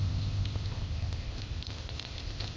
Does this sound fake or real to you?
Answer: fake